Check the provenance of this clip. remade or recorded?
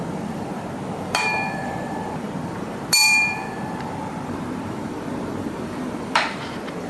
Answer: remade